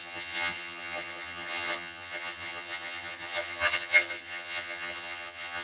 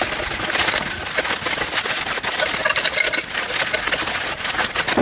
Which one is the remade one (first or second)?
first